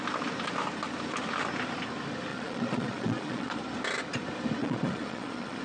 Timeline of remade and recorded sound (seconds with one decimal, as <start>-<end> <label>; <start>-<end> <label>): 0.0-2.3 recorded; 2.3-3.6 remade; 3.6-4.6 recorded; 4.6-5.6 remade